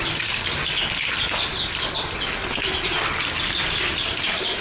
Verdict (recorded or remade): recorded